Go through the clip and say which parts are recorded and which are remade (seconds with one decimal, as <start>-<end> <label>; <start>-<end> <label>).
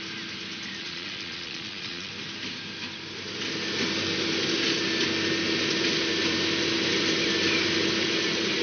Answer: 0.0-0.8 recorded; 0.8-2.1 remade; 2.1-8.6 recorded